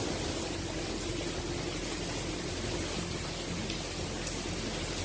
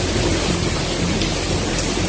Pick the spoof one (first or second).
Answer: second